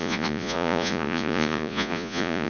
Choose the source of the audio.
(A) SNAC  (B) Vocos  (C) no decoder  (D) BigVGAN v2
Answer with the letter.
B